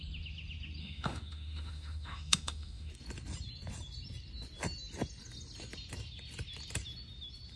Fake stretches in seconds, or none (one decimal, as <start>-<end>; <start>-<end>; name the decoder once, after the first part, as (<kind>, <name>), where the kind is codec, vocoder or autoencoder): 0.8-2.9 (autoencoder, DAC-VAE)